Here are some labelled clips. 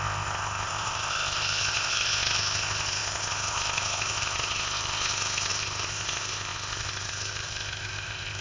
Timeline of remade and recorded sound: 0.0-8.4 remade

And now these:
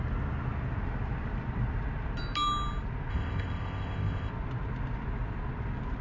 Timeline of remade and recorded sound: 0.0-3.1 recorded; 3.1-4.3 remade; 4.3-6.0 recorded

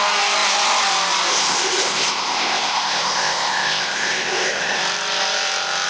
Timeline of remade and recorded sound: 0.0-1.3 recorded; 1.3-4.8 remade; 4.8-5.9 recorded

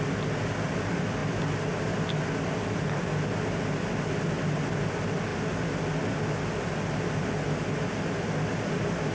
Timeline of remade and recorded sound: 0.0-9.1 recorded